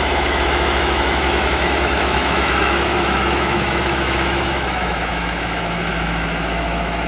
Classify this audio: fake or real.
fake